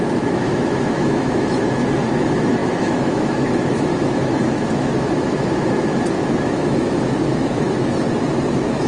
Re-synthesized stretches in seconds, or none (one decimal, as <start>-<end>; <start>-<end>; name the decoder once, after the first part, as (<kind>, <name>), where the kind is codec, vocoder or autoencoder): 0.0-7.9 (autoencoder, DAC-VAE); 8.5-8.9